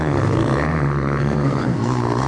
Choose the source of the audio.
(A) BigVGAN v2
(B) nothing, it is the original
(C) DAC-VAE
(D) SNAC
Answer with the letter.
D